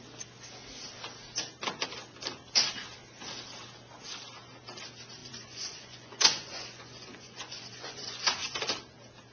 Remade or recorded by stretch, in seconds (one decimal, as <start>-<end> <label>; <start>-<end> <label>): 0.0-5.2 recorded; 5.2-8.6 remade; 8.6-9.3 recorded

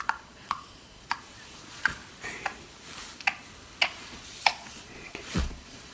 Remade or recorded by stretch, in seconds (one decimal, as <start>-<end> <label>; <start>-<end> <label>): 0.0-2.0 remade; 2.0-4.0 recorded; 4.0-5.9 remade

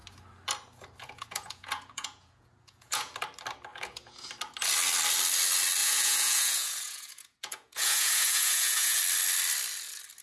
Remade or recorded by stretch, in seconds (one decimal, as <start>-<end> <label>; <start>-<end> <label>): 0.0-1.0 recorded; 1.0-3.1 remade; 3.1-3.7 recorded; 3.7-4.3 remade; 4.3-5.8 recorded; 5.8-9.0 remade; 9.0-10.2 recorded

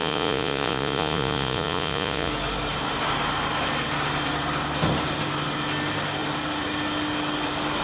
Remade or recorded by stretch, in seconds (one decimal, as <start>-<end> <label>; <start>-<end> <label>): 0.0-2.3 remade; 2.3-7.8 recorded